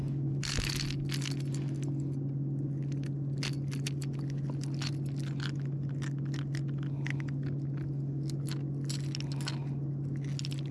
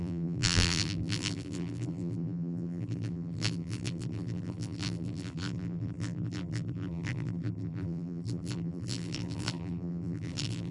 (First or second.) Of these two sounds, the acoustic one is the first